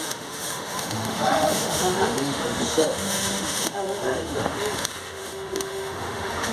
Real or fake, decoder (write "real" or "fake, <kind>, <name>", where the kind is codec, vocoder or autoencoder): fake, autoencoder, DAC-VAE